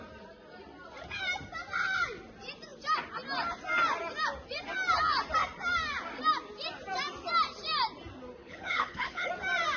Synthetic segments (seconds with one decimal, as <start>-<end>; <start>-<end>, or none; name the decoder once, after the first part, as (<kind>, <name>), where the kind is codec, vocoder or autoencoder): 8.4-9.3 (codec, HILCodec)